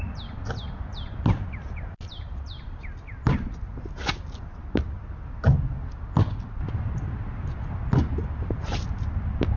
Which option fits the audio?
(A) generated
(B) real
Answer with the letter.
B